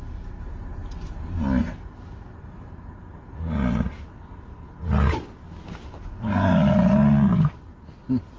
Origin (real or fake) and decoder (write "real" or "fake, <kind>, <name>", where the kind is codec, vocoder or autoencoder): real